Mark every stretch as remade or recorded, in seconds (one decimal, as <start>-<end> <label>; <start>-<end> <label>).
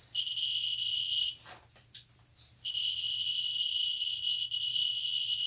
0.0-3.6 recorded; 3.6-4.1 remade; 4.1-5.5 recorded